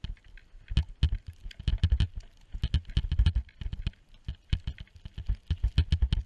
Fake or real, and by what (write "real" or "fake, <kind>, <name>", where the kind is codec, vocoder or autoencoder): real